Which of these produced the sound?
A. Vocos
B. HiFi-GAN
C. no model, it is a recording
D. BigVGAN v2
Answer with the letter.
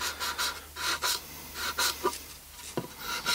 C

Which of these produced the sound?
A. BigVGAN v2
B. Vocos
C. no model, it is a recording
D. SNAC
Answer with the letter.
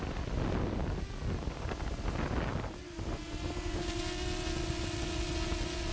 C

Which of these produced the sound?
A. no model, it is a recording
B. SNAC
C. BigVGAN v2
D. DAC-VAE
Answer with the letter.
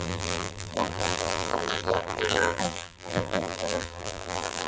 C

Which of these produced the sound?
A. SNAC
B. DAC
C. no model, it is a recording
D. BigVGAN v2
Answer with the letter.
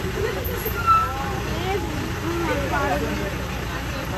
C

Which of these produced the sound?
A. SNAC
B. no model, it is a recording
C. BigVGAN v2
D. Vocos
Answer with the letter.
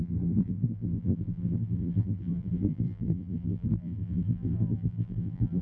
C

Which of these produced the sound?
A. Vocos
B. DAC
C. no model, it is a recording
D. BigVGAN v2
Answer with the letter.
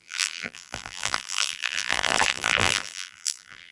D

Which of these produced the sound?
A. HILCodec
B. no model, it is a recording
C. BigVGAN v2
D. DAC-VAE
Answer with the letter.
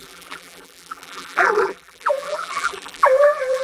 C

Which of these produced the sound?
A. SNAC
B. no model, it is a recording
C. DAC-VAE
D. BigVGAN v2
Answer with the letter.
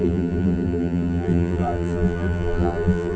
D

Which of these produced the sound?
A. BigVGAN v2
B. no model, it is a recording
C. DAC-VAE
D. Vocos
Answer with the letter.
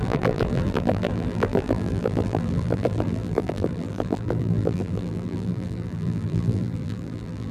A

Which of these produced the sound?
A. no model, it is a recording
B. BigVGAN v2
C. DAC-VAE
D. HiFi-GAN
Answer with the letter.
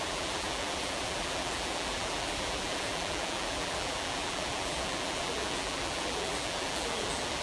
B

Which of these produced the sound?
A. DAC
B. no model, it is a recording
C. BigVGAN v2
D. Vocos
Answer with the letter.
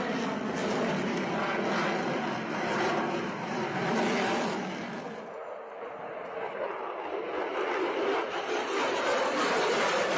C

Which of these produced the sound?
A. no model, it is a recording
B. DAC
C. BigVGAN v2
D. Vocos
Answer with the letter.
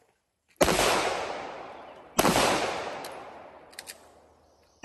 A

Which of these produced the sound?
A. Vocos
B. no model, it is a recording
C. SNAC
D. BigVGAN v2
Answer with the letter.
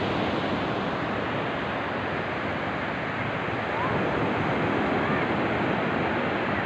B